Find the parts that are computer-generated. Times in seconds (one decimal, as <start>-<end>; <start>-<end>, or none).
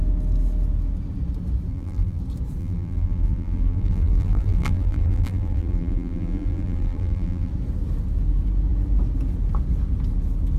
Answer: 1.7-2.2; 2.6-7.5